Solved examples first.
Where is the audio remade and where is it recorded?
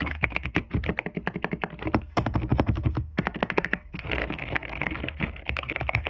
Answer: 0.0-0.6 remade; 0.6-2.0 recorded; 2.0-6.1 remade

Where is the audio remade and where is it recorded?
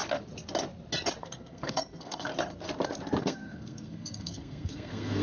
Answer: 0.0-1.2 recorded; 1.2-2.3 remade; 2.3-3.2 recorded; 3.2-5.2 remade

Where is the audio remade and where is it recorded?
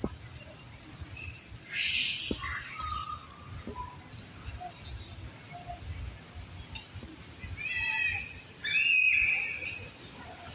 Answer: 0.0-10.5 recorded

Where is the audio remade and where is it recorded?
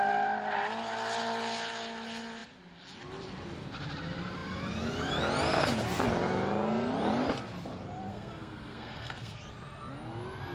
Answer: 0.0-8.1 recorded; 8.1-9.4 remade; 9.4-10.5 recorded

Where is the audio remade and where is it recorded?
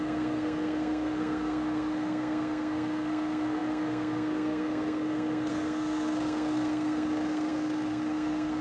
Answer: 0.0-8.6 remade